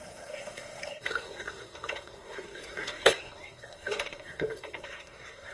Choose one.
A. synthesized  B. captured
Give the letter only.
A